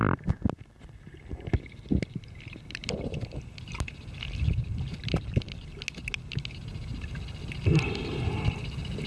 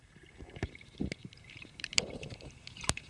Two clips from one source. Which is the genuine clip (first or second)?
first